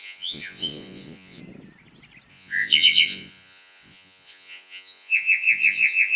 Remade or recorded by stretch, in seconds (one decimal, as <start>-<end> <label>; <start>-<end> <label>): 0.0-1.4 remade; 1.4-2.3 recorded; 2.3-6.2 remade